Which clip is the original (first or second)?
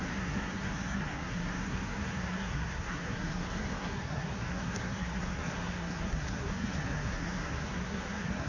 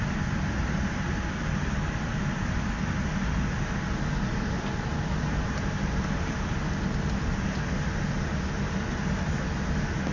second